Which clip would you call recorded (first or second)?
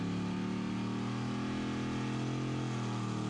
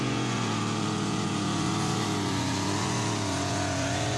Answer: first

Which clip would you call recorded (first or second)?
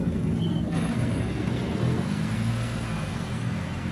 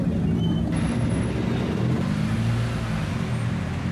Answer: second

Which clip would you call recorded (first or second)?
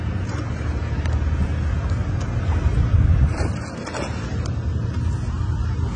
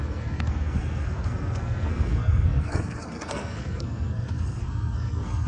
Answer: first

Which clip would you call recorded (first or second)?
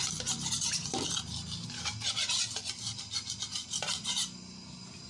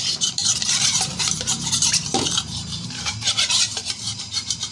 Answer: first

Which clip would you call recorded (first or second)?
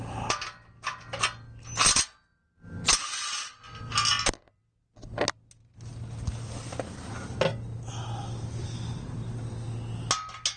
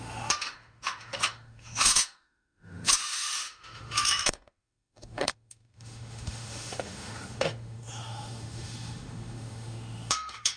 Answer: first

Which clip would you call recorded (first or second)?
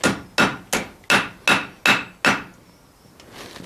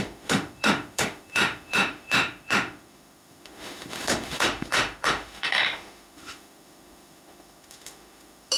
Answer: first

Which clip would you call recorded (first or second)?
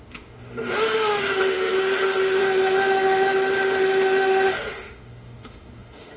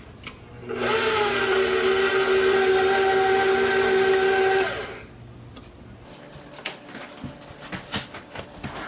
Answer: second